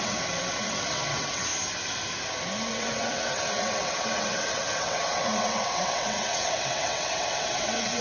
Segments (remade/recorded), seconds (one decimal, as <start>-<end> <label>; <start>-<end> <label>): 0.0-1.5 remade; 1.5-2.7 recorded; 2.7-8.0 remade